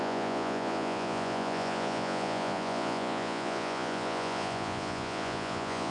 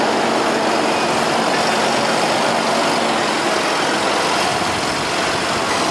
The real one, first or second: second